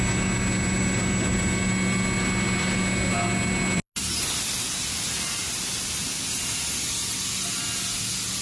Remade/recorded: recorded